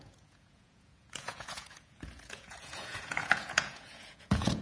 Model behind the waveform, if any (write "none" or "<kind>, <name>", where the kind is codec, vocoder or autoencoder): vocoder, Vocos